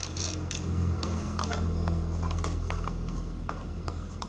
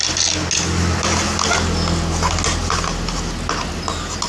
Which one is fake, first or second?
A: first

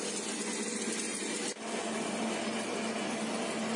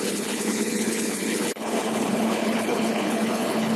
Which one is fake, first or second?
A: second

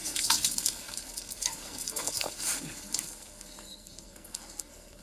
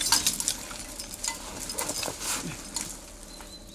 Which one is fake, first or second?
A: first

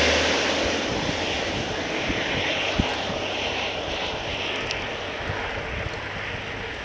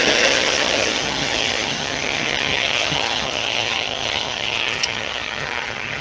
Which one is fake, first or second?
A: second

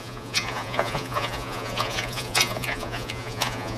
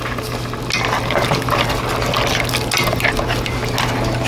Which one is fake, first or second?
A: first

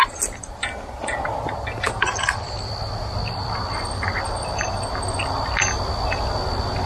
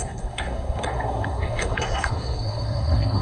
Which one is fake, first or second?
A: second